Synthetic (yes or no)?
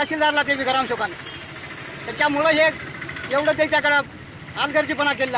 no